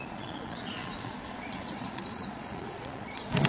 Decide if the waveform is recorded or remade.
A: remade